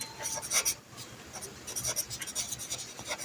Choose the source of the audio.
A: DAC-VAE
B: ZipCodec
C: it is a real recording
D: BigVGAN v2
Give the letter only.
C